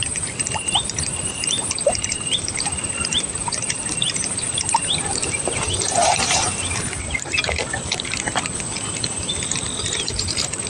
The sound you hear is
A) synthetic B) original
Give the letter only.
A